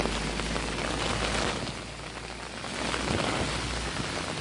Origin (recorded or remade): recorded